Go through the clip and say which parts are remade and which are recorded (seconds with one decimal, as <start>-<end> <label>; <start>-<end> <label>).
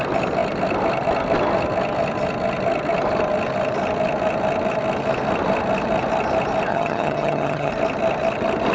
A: 0.0-6.7 recorded; 6.7-7.7 remade; 7.7-8.7 recorded